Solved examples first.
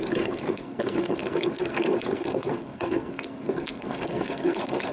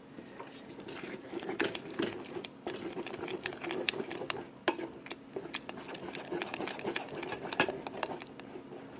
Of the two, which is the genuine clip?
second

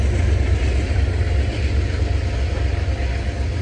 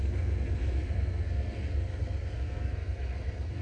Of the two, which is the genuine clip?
first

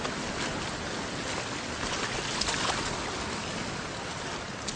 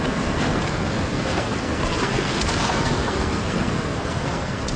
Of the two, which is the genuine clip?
first